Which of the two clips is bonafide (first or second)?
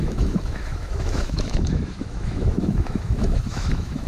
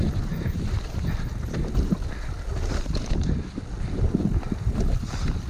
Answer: second